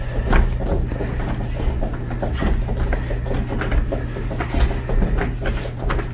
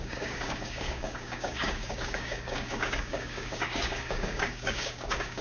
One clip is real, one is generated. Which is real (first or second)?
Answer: first